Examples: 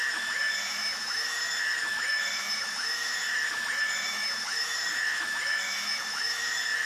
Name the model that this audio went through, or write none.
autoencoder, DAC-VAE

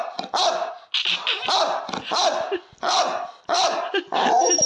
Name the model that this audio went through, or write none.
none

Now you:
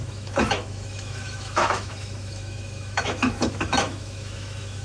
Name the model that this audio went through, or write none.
autoencoder, DAC-VAE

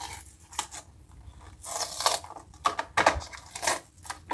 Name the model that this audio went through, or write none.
none